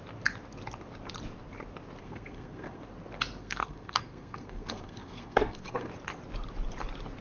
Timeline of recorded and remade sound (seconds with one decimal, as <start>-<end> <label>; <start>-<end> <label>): 0.0-2.0 recorded; 2.0-2.8 remade; 2.8-3.4 recorded; 3.4-5.9 remade; 5.9-7.2 recorded